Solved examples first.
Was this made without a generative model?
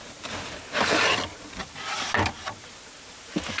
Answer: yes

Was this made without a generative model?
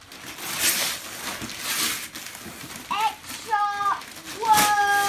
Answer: yes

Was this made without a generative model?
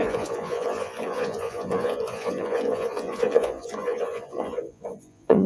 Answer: no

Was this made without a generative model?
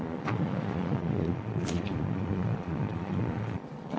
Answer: no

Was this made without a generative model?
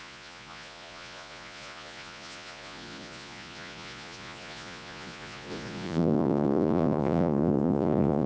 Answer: no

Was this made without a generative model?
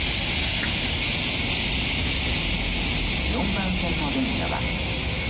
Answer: yes